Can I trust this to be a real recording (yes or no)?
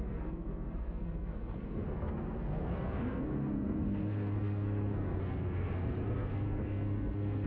no